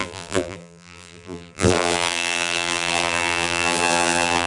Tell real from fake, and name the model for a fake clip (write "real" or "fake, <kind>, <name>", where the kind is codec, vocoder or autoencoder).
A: fake, vocoder, BigVGAN v2